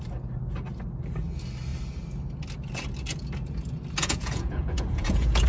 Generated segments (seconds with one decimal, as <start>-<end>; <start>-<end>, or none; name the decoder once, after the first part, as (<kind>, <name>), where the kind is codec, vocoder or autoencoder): 4.0-5.5 (vocoder, Vocos)